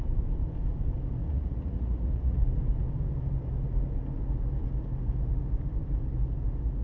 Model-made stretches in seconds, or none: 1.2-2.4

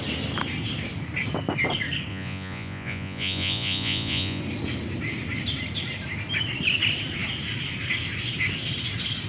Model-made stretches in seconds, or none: 2.1-4.4

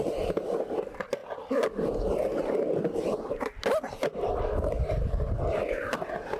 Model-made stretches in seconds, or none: none

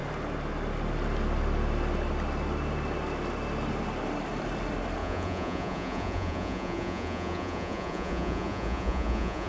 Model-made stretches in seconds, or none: 5.0-9.5